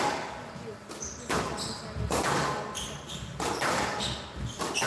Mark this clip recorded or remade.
recorded